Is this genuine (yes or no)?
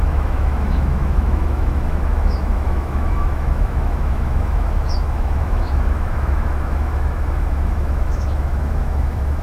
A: no